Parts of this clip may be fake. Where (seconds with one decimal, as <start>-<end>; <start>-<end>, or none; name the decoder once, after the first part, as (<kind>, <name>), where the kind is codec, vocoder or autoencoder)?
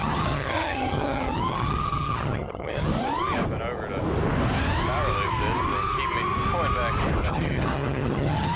0.0-2.9 (vocoder, HiFi-GAN); 7.3-8.6